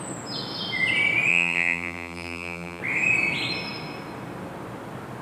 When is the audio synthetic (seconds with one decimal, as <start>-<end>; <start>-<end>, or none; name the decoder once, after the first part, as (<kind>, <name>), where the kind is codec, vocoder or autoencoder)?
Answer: 1.3-2.8 (vocoder, BigVGAN v2)